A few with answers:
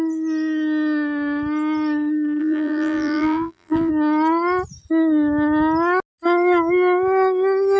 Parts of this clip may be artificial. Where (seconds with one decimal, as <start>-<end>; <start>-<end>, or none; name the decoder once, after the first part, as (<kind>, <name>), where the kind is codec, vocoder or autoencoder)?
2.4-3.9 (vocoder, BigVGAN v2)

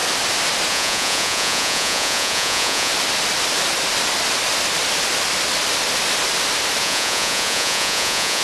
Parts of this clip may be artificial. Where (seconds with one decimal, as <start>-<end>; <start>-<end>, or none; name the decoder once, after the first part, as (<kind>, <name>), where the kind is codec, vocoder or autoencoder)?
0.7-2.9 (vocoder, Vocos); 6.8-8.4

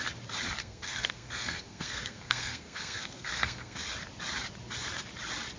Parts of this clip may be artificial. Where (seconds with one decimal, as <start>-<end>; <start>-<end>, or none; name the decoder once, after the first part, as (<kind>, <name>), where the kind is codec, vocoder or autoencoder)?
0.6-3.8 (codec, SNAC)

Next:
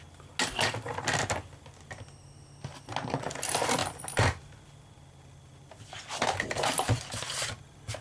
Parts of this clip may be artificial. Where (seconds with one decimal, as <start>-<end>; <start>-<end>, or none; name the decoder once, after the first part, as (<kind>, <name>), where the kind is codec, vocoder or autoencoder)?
none

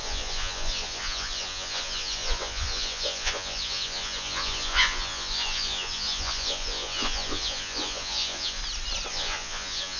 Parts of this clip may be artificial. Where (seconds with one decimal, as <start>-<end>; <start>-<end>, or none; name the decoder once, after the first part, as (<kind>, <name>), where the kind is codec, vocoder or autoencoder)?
0.0-8.6 (vocoder, Vocos); 9.1-10.0

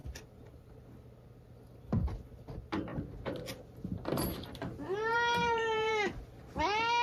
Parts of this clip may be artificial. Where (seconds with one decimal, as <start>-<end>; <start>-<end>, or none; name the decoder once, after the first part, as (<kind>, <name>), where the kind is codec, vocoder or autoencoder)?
0.0-0.7 (vocoder, BigVGAN v2); 5.1-5.9

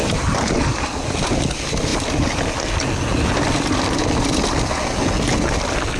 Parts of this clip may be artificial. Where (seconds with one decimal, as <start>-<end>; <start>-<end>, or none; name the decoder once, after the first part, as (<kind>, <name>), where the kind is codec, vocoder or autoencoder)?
none

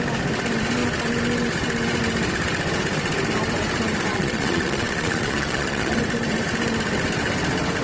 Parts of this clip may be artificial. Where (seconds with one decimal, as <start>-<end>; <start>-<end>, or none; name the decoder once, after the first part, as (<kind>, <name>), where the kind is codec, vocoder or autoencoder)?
4.1-6.0 (vocoder, Vocos)